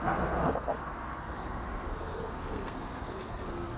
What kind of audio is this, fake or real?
fake